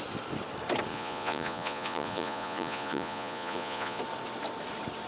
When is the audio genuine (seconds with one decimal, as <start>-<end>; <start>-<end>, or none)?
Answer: 0.0-0.9; 4.0-5.1